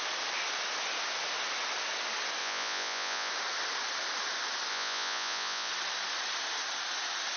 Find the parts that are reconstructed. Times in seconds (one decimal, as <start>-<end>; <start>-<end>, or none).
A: 2.4-3.3; 4.7-5.7